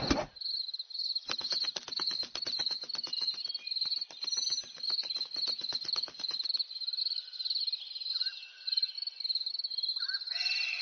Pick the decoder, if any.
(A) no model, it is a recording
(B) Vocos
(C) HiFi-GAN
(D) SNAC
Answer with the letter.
A